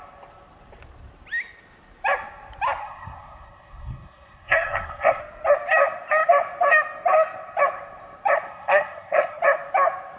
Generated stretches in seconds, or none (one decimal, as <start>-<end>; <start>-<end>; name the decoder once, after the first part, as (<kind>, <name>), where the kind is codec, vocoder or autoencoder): 2.8-5.2 (codec, SNAC); 8.5-9.4